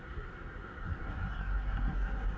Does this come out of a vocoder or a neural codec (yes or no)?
yes